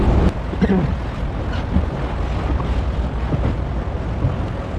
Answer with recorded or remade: recorded